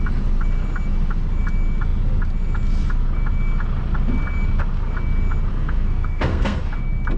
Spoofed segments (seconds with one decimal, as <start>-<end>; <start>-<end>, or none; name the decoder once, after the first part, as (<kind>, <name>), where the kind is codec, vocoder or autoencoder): 5.5-6.6 (codec, SNAC)